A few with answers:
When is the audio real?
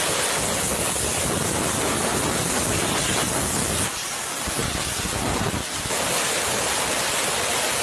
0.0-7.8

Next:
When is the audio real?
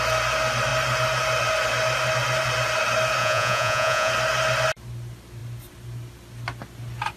0.0-3.2; 4.1-7.2